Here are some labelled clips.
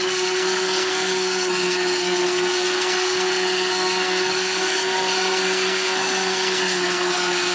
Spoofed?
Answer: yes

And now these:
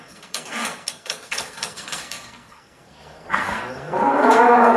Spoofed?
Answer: yes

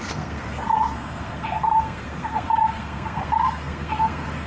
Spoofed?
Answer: yes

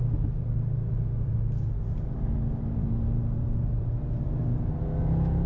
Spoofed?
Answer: no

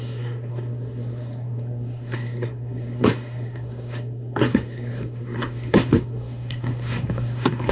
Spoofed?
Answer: yes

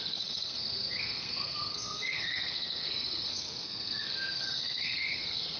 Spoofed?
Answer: yes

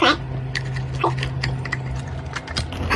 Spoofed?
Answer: no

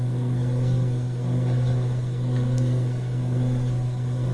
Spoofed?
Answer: yes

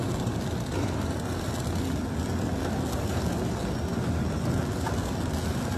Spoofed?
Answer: no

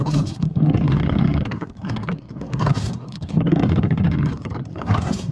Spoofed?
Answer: yes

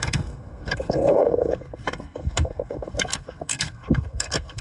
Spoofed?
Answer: yes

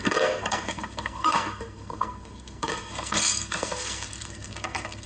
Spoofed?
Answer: yes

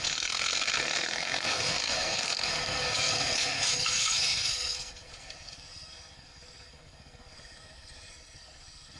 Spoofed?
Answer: yes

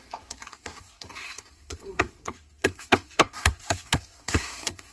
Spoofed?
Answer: yes